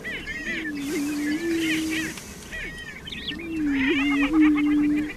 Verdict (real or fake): real